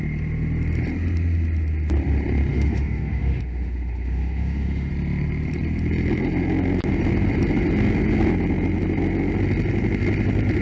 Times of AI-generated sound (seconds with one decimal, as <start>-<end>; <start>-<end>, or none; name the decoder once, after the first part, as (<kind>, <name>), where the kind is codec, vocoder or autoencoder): 2.5-4.9 (autoencoder, DAC-VAE)

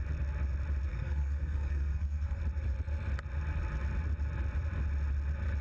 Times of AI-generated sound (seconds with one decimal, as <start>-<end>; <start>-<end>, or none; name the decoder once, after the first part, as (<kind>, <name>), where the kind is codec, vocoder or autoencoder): 0.9-2.4 (codec, SNAC)

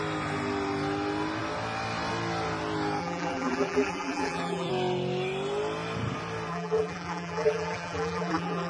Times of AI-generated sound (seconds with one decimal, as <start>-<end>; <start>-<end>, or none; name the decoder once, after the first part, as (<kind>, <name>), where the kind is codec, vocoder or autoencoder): 3.0-4.7 (vocoder, BigVGAN v2); 6.5-8.7

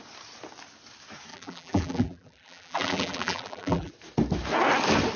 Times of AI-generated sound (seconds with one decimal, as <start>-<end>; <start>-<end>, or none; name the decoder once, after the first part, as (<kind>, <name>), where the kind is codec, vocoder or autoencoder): 1.3-3.9 (vocoder, BigVGAN v2)

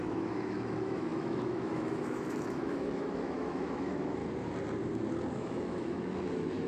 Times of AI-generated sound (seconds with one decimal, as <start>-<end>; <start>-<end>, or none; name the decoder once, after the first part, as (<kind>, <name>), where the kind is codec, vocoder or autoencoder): 0.0-4.2 (autoencoder, DAC-VAE); 5.3-6.7

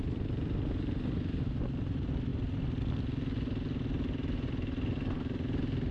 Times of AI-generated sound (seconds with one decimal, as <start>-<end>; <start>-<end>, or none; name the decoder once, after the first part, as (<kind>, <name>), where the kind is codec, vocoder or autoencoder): none